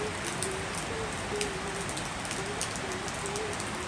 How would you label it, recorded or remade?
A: recorded